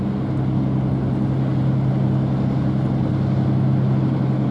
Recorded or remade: recorded